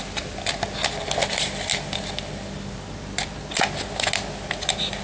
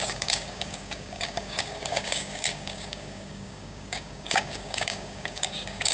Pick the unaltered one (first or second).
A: first